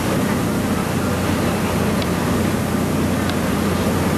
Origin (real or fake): real